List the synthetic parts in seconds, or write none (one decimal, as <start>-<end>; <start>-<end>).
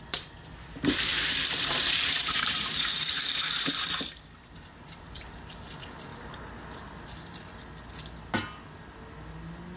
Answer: 1.1-5.5; 6.1-6.8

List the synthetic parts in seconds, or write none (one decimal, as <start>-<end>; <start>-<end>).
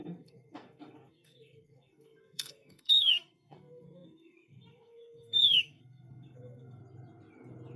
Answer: 0.0-6.8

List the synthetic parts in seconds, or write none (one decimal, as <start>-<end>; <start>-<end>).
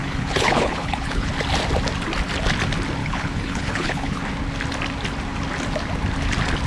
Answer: 0.0-1.3; 3.0-4.2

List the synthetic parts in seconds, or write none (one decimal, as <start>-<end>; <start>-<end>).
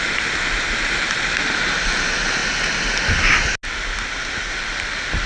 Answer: none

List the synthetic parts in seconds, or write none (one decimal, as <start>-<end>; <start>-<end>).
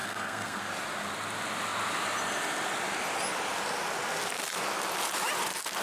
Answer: 0.0-0.6